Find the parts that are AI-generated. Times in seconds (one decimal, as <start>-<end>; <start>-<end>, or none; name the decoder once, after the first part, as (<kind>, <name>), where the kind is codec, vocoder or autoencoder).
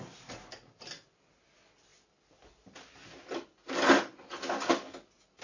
none